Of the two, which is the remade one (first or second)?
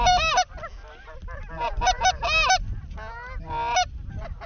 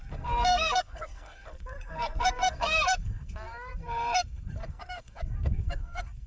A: second